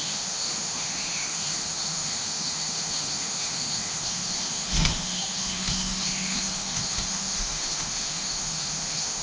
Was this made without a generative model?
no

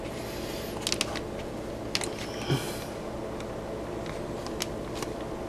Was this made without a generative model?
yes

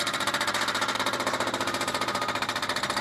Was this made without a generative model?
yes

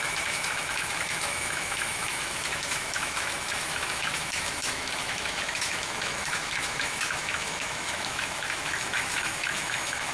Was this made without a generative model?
no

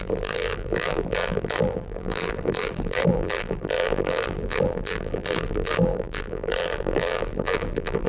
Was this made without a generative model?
no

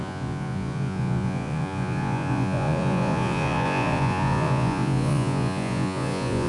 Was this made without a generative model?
no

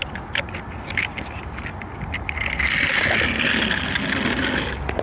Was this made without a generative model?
yes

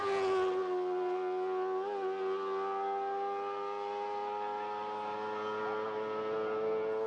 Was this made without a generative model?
yes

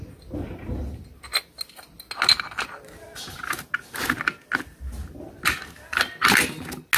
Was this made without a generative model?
yes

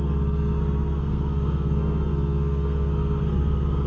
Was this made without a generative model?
no